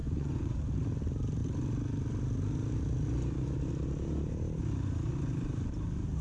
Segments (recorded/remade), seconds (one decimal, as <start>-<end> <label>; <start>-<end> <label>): 0.0-0.6 remade; 0.6-6.2 recorded